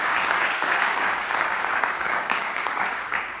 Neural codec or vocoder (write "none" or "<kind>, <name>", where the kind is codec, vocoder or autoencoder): codec, DAC